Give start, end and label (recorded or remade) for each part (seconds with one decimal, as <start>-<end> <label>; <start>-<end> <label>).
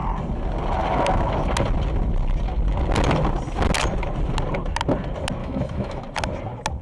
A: 0.0-5.4 recorded; 5.4-6.0 remade; 6.0-6.8 recorded